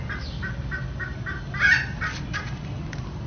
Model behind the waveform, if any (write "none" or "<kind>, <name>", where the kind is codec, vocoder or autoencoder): none